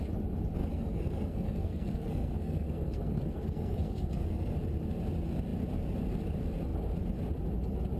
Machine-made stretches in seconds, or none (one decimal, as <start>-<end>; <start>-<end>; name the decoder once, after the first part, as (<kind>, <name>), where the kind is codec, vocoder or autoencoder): 0.6-4.5 (codec, SNAC)